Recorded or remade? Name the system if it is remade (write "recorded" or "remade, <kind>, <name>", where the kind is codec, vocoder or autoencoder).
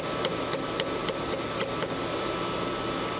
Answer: recorded